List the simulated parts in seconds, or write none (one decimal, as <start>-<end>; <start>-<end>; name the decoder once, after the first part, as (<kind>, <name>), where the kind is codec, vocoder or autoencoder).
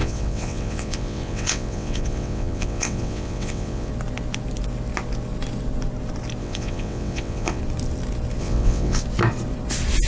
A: 0.0-3.9 (vocoder, WaveNeXt); 6.4-7.6; 8.4-9.0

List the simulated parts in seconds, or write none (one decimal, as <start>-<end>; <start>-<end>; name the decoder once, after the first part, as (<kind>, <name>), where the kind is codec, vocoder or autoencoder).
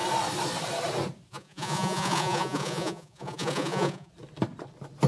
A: 1.3-4.1 (vocoder, Vocos)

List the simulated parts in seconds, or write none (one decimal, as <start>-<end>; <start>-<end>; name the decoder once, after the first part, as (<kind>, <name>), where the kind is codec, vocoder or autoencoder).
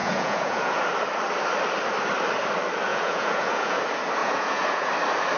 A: 0.0-0.8 (vocoder, Vocos); 2.9-3.8; 4.2-4.9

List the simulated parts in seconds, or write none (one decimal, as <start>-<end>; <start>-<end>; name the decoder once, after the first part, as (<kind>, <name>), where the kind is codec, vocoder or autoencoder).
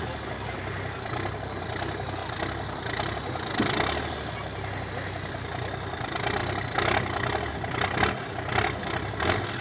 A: none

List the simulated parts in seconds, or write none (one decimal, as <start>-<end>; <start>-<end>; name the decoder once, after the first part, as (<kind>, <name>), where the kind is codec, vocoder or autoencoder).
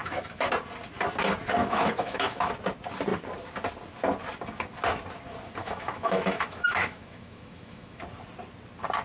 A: 0.0-0.5 (autoencoder, DAC-VAE); 1.6-2.5; 5.6-8.0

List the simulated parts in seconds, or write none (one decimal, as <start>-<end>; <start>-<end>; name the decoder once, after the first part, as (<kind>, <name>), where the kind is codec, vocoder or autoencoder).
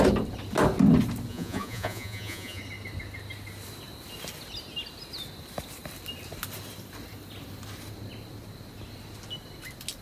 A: 1.3-2.6 (vocoder, Vocos)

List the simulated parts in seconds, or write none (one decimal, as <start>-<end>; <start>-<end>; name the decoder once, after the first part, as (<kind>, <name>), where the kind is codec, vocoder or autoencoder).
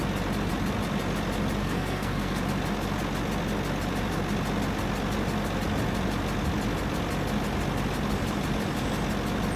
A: 1.6-2.4 (codec, SNAC)